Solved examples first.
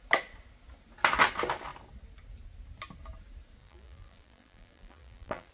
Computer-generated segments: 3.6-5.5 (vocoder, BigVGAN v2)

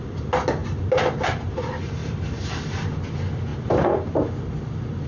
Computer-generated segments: 0.6-1.5 (vocoder, BigVGAN v2); 2.0-2.9; 3.5-4.1

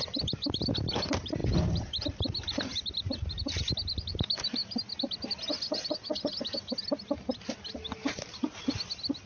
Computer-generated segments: none

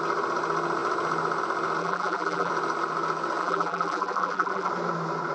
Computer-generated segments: 1.8-2.5 (vocoder, BigVGAN v2); 3.4-4.7

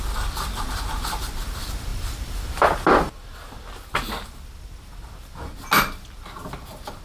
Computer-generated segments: none

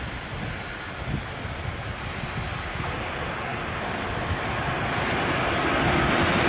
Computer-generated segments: none

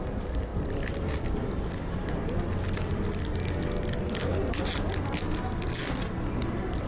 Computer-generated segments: none

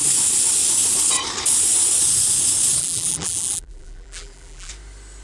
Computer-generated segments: 2.8-4.7 (vocoder, BigVGAN v2)